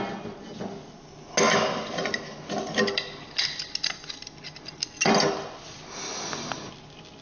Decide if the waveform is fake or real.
real